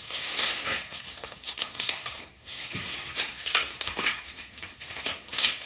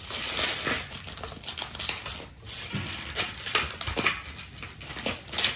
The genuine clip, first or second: second